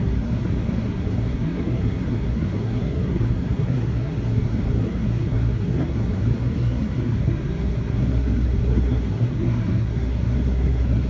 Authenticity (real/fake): fake